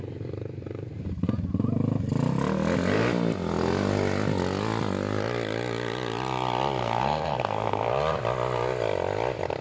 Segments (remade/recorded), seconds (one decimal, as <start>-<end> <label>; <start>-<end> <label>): 0.0-6.8 recorded; 6.8-7.9 remade; 7.9-9.6 recorded